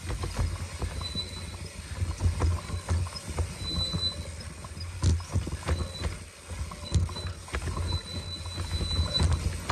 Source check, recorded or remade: recorded